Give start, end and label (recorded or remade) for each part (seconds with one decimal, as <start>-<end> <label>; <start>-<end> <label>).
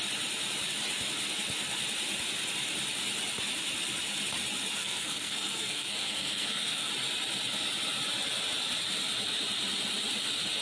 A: 0.0-4.8 recorded; 4.8-6.9 remade; 6.9-10.6 recorded